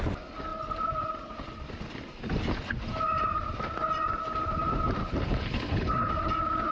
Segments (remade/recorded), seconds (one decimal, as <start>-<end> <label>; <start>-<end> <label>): 0.0-5.0 recorded; 5.0-6.1 remade; 6.1-6.7 recorded